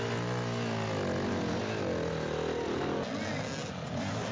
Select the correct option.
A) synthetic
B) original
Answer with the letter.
B